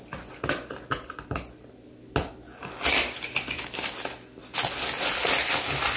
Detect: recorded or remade recorded